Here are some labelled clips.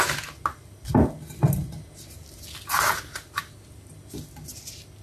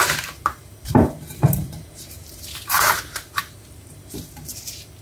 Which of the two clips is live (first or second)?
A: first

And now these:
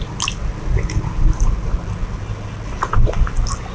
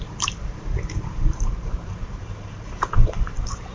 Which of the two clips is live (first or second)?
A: first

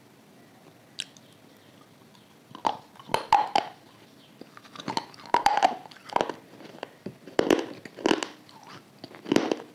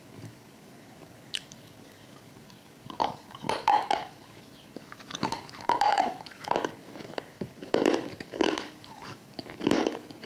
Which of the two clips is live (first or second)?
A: first